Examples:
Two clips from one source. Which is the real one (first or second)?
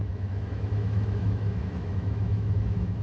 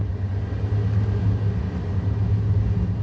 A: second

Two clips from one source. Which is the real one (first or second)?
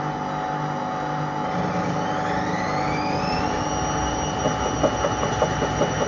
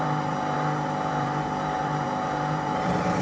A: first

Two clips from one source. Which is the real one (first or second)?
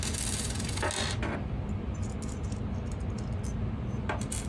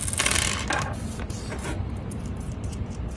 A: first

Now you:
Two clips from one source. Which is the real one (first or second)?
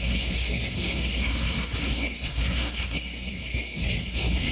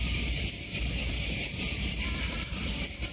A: second